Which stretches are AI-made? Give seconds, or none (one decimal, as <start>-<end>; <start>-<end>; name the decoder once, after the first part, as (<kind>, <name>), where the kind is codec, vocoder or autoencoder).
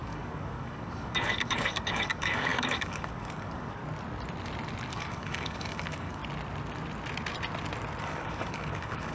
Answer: 0.0-3.8 (codec, DAC); 4.9-6.2; 8.0-9.1